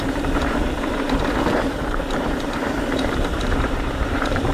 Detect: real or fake fake